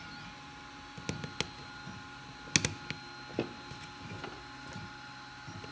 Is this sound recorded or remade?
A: recorded